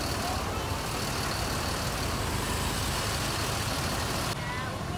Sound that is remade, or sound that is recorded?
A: recorded